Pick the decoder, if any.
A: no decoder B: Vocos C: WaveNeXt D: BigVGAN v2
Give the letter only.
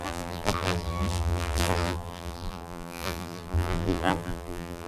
D